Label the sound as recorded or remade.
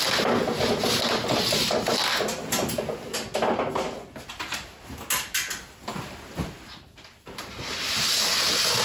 recorded